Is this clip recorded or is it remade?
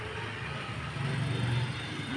recorded